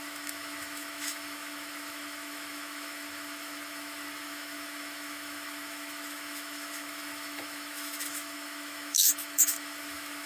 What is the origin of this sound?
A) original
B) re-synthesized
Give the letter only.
B